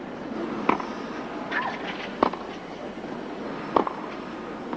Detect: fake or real real